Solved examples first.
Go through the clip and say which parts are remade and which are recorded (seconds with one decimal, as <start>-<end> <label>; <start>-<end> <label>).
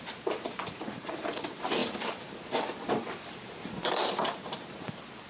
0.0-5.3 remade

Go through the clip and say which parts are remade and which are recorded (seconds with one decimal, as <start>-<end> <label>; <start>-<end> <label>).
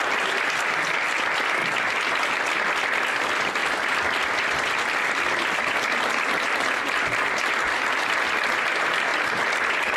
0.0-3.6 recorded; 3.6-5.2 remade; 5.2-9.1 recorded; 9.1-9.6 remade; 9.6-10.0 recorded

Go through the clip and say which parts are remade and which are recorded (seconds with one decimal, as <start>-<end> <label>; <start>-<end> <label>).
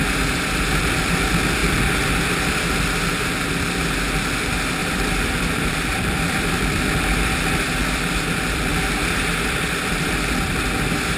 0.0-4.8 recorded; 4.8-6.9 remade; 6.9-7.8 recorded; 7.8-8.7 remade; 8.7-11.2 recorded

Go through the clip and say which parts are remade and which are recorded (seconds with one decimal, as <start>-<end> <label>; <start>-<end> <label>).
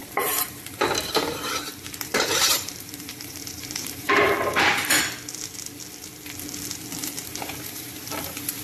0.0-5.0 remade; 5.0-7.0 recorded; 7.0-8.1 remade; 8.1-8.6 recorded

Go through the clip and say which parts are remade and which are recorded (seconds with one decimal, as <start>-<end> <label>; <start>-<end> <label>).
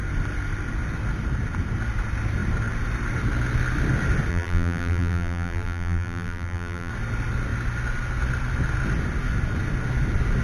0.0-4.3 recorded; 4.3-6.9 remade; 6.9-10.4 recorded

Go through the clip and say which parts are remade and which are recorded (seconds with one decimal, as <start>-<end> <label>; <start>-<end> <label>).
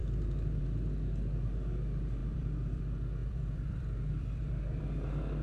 0.0-2.2 recorded; 2.2-2.8 remade; 2.8-3.2 recorded; 3.2-4.8 remade; 4.8-5.4 recorded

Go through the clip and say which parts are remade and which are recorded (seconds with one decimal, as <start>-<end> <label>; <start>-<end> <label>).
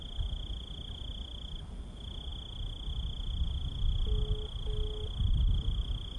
0.0-6.2 recorded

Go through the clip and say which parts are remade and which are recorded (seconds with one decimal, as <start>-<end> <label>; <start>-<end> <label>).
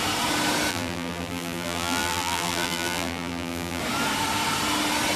0.0-0.7 recorded; 0.7-3.8 remade; 3.8-5.2 recorded